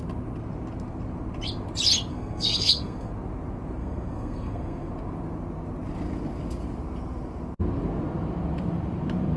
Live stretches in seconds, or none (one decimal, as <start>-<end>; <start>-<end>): 0.0-2.1; 3.1-3.8; 4.9-9.4